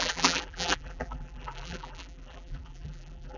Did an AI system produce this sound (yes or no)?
yes